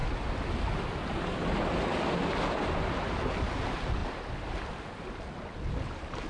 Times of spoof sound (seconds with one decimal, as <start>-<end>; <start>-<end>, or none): none